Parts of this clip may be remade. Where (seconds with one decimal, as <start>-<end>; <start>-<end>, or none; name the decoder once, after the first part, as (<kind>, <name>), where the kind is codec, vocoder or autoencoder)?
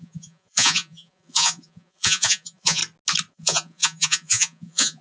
0.0-2.8 (vocoder, Vocos); 3.3-5.0